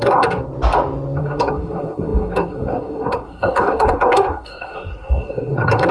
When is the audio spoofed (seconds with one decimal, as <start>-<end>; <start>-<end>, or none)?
0.0-0.4; 1.2-5.9